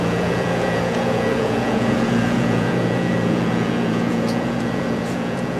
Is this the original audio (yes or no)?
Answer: no